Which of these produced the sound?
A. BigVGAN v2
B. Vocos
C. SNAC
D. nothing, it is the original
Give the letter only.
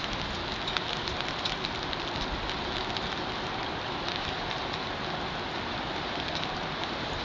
D